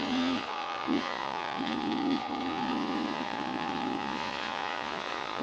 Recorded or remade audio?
remade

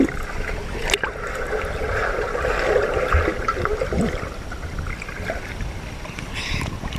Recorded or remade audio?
recorded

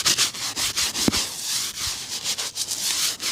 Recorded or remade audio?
recorded